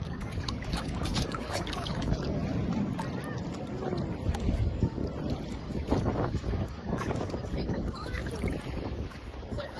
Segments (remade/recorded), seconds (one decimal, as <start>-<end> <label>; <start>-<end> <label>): 0.0-2.4 remade; 2.4-4.3 recorded; 4.3-5.0 remade; 5.0-5.5 recorded; 5.5-8.2 remade; 8.2-8.8 recorded; 8.8-9.8 remade